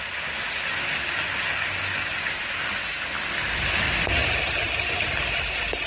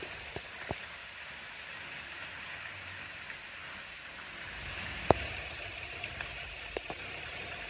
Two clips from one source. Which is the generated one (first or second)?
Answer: second